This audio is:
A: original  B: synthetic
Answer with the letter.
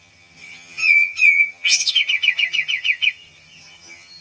B